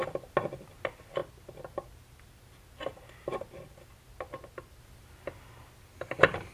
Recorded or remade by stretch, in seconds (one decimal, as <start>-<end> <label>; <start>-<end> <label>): 0.0-6.5 recorded